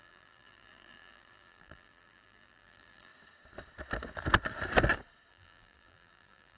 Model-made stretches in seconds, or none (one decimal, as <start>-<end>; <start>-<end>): 0.0-3.1; 5.3-6.6